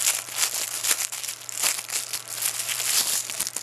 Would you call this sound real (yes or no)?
yes